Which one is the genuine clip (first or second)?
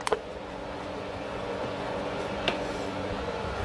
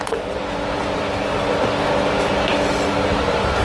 second